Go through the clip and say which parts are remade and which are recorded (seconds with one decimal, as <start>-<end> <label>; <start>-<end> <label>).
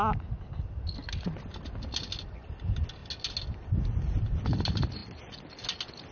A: 0.0-6.1 recorded